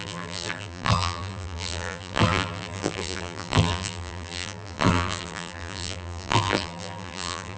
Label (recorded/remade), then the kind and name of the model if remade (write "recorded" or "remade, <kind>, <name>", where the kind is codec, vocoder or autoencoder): remade, vocoder, BigVGAN v2